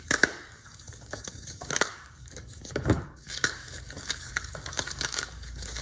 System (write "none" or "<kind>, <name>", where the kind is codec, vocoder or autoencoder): codec, DAC